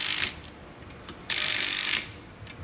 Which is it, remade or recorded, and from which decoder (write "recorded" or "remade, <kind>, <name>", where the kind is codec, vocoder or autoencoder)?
recorded